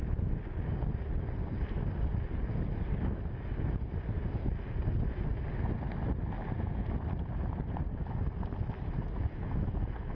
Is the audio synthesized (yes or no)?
no